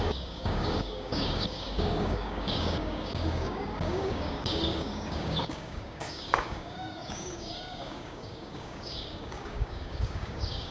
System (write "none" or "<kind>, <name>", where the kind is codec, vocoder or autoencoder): codec, DAC